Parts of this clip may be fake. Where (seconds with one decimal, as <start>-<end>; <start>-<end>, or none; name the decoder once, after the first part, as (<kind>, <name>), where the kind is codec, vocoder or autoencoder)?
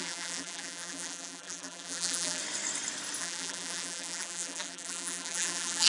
0.0-2.4 (vocoder, BigVGAN v2); 3.2-5.9